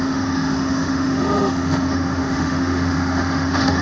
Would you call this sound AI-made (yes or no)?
yes